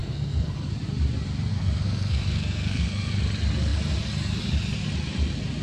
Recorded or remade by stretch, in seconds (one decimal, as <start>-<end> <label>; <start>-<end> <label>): 0.0-0.7 remade; 0.7-1.5 recorded; 1.5-3.1 remade; 3.1-5.6 recorded